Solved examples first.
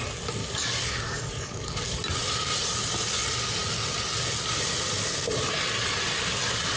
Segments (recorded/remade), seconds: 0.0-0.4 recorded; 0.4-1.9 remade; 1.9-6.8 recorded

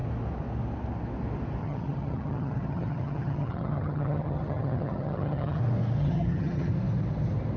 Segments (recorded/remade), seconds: 0.0-1.6 recorded; 1.6-5.6 remade; 5.6-6.0 recorded; 6.0-6.7 remade; 6.7-7.6 recorded

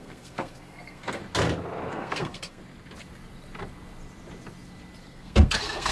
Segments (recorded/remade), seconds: 0.0-1.2 remade; 1.2-1.9 recorded; 1.9-2.6 remade; 2.6-5.0 recorded; 5.0-5.9 remade

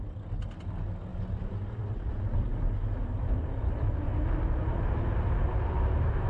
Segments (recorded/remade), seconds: 0.0-6.3 recorded

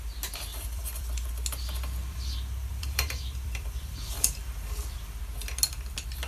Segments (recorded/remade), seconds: 0.0-0.5 recorded; 0.5-1.3 remade; 1.3-2.0 recorded; 2.0-5.2 remade; 5.2-6.3 recorded

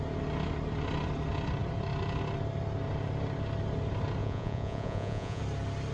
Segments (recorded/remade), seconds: 0.0-4.2 recorded; 4.2-5.4 remade; 5.4-5.9 recorded

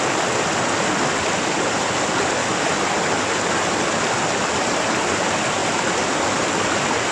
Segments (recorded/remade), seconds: 0.0-7.1 recorded

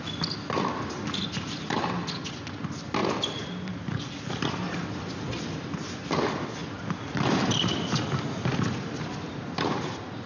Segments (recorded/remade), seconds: 0.0-3.0 recorded; 3.0-4.5 remade; 4.5-6.6 recorded; 6.6-10.3 remade